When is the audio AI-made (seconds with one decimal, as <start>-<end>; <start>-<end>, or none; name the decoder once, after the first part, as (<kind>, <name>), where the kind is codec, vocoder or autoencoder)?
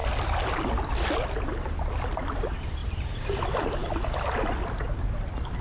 none